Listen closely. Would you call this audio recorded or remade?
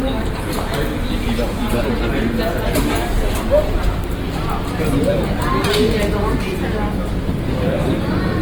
recorded